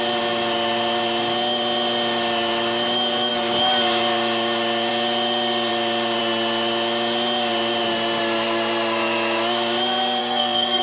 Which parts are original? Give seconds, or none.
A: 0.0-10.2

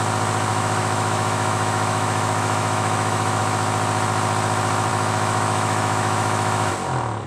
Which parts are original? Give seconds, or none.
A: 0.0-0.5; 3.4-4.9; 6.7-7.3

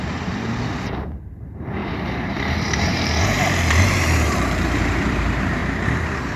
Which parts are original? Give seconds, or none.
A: 5.6-6.4